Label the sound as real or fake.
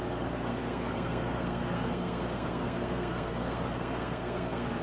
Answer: fake